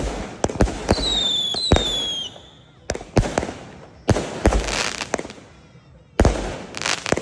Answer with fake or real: real